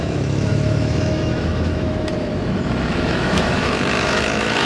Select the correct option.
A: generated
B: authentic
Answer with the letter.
A